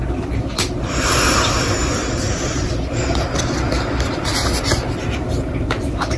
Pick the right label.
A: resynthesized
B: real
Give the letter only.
B